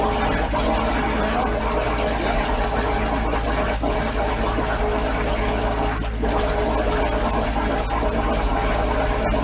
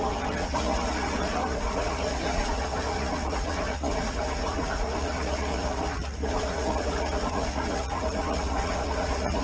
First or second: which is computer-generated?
second